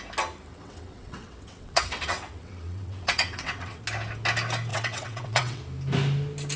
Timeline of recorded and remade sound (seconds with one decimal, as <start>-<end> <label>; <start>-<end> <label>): 0.0-0.5 recorded; 0.5-3.8 remade; 3.8-4.7 recorded; 4.7-5.6 remade; 5.6-6.6 recorded